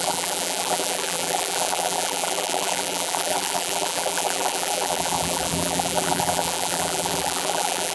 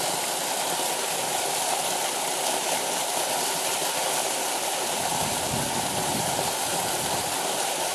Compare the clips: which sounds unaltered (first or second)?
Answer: second